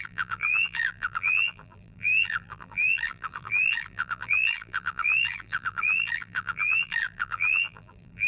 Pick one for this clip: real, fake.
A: fake